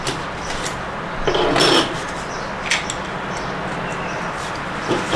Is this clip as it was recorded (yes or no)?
yes